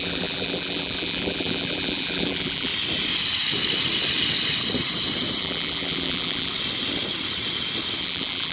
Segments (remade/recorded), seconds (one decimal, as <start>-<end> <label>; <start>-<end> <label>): 0.0-2.7 remade; 2.7-5.4 recorded; 5.4-6.5 remade; 6.5-8.0 recorded; 8.0-8.5 remade